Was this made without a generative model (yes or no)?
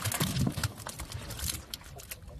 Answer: yes